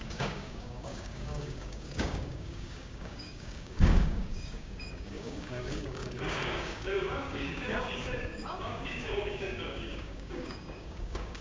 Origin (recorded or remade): remade